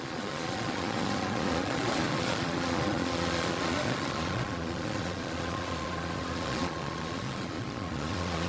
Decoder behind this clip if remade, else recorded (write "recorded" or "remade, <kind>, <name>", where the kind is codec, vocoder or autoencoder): remade, vocoder, Vocos